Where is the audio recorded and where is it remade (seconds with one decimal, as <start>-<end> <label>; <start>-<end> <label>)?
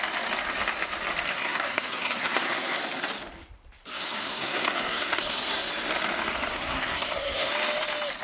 0.0-1.3 recorded; 1.3-2.8 remade; 2.8-3.9 recorded; 3.9-5.7 remade; 5.7-6.5 recorded; 6.5-7.5 remade; 7.5-8.2 recorded